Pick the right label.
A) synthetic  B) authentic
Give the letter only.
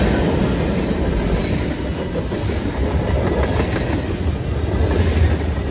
B